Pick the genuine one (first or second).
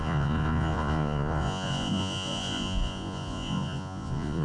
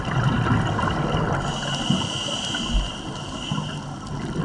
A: second